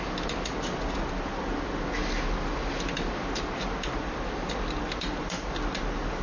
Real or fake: real